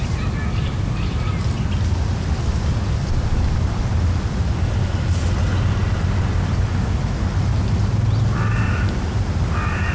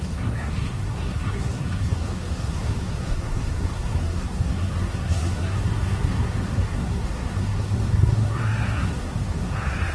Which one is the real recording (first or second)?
first